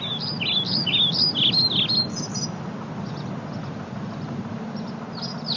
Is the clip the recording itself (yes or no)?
yes